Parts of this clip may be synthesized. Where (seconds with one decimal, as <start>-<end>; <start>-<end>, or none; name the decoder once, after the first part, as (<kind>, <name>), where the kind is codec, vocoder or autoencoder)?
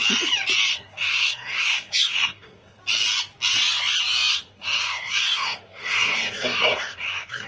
0.7-2.8 (codec, SNAC); 4.3-7.5